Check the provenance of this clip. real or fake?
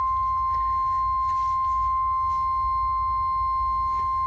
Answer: real